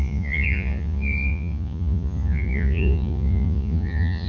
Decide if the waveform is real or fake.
fake